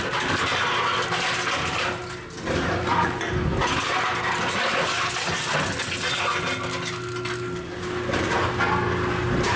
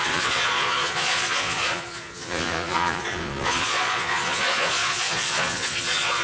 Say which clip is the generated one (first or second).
second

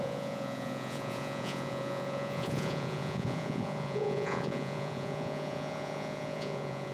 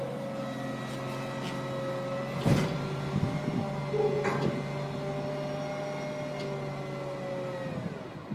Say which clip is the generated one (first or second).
first